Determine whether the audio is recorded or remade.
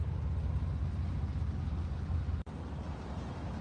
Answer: recorded